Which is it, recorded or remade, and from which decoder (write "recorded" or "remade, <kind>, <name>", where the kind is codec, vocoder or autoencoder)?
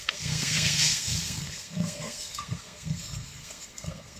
remade, codec, SNAC